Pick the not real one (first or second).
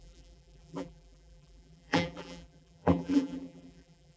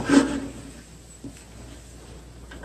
first